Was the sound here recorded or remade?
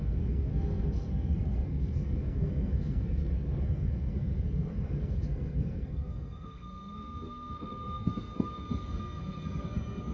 remade